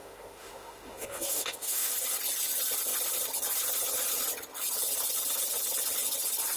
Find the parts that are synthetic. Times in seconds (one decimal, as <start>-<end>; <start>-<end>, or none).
0.0-1.9